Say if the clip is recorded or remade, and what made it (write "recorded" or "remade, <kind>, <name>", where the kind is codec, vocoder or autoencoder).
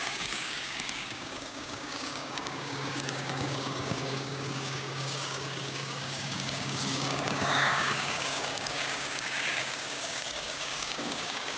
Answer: remade, codec, DAC